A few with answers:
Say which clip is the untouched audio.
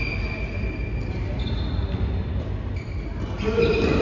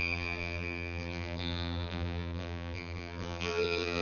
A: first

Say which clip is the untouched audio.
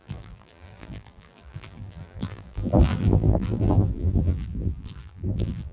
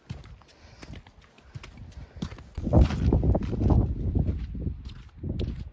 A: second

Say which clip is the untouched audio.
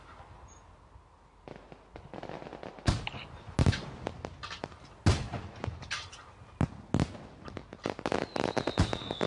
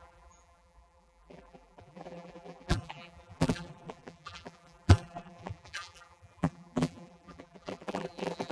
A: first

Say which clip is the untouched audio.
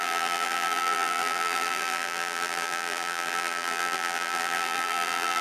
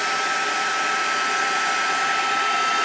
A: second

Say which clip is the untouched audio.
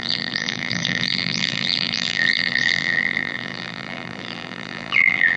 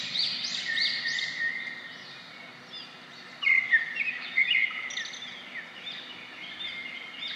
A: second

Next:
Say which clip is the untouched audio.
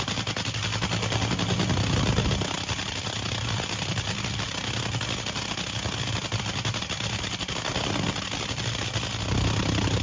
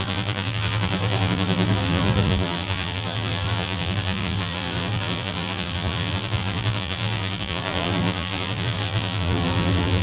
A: first